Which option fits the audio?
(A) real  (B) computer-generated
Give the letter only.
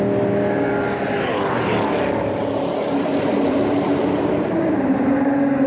A